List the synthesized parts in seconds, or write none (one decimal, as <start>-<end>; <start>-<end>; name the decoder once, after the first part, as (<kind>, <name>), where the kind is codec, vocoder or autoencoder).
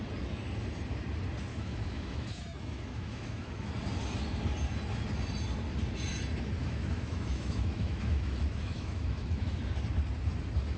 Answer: 1.5-3.7 (autoencoder, DAC-VAE); 6.6-9.6